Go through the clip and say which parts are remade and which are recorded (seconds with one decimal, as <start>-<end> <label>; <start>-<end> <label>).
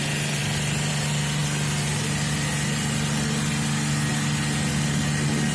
0.0-5.5 recorded